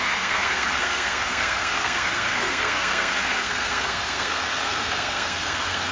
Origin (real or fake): fake